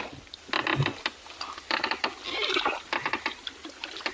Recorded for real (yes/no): yes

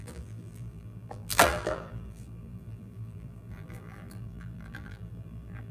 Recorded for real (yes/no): no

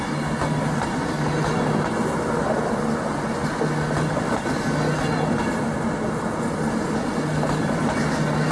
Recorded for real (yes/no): yes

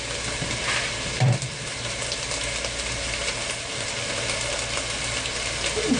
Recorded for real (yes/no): yes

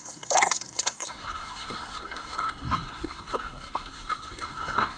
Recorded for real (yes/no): no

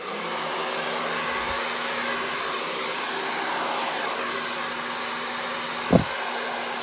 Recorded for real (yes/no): yes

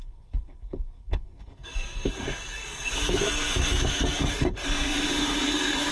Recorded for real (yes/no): no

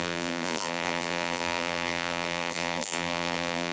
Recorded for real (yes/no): no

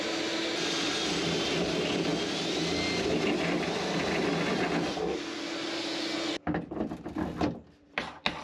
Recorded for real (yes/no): yes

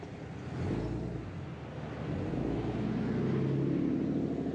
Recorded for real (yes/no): yes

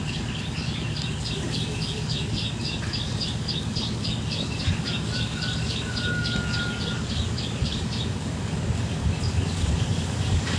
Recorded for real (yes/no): no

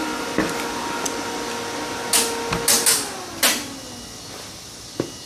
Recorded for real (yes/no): yes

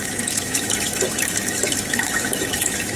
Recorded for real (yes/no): no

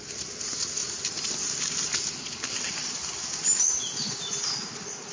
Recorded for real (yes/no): yes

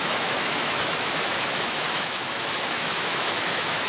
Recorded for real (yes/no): no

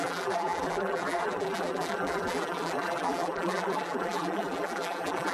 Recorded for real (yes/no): no